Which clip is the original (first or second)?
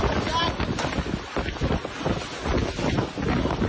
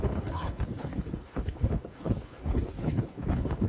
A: first